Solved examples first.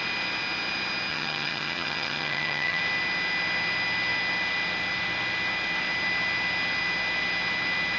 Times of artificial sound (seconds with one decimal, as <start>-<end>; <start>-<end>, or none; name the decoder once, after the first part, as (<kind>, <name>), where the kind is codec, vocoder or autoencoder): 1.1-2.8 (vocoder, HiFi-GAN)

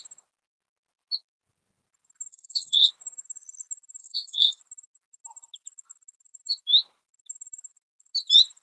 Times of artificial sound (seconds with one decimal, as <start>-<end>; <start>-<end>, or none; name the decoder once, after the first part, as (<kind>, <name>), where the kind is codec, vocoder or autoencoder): 2.3-2.9 (codec, SNAC); 4.0-4.6

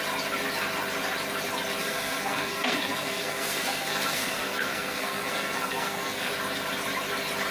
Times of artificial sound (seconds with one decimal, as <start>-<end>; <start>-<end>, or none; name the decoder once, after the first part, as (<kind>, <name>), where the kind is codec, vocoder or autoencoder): 1.8-6.3 (codec, SNAC)